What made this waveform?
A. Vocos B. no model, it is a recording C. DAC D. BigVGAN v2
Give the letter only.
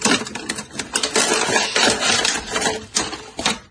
B